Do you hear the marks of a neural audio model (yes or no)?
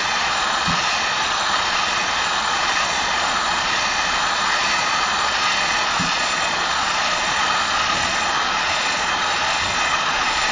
yes